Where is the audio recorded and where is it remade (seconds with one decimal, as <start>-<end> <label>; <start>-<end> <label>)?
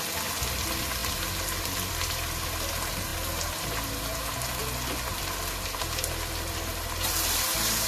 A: 0.0-7.9 recorded